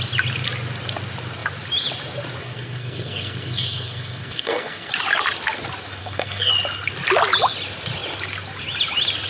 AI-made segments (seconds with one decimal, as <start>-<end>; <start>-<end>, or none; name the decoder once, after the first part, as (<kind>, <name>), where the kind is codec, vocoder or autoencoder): 2.4-4.9 (codec, SNAC); 6.0-6.5

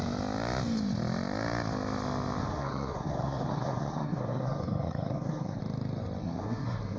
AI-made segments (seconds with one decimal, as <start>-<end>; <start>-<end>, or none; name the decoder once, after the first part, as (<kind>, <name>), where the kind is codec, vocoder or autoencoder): 2.4-5.6 (codec, SNAC); 6.2-7.0